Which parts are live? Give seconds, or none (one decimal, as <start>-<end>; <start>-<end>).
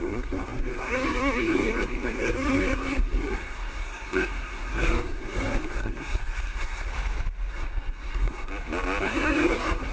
6.9-7.5; 8.5-9.0